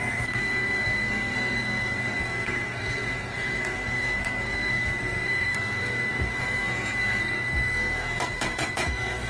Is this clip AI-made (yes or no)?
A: yes